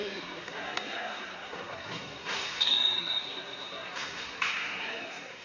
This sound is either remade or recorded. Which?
remade